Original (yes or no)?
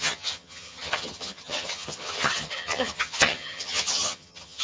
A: no